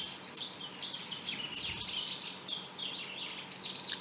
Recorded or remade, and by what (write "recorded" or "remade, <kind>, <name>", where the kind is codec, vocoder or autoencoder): recorded